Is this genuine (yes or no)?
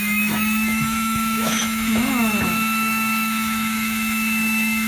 no